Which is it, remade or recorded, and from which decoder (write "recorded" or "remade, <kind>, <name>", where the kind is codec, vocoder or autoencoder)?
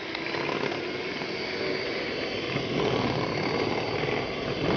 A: recorded